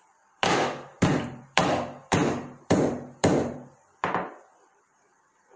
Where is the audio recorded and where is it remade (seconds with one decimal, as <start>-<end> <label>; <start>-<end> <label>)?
0.0-5.6 remade